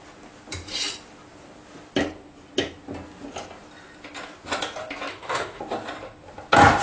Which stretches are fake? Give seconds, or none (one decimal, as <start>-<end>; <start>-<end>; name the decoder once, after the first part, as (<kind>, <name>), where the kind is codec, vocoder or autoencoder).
5.1-5.6 (autoencoder, DAC-VAE)